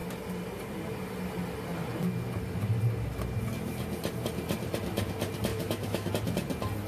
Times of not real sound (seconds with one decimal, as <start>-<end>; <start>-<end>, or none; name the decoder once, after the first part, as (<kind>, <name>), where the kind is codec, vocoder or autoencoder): 5.5-6.1 (autoencoder, DAC-VAE)